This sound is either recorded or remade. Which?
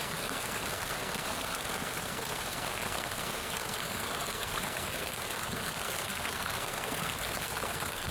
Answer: remade